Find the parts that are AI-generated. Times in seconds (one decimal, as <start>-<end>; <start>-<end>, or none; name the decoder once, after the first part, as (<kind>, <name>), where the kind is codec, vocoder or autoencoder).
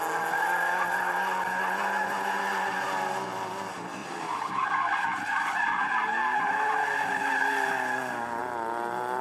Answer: 4.0-4.5 (vocoder, BigVGAN v2); 8.4-9.2